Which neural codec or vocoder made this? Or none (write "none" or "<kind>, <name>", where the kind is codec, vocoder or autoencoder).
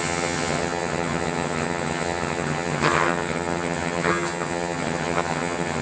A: vocoder, HiFi-GAN